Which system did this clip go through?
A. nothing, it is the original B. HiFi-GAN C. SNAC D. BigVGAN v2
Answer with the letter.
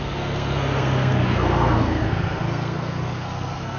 C